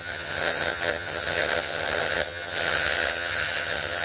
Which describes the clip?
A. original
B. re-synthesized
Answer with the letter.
B